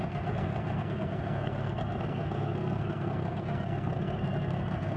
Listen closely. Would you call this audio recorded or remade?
remade